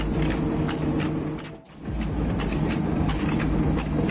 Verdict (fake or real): real